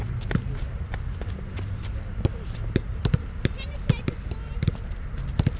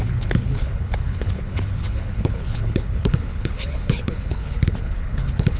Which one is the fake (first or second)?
second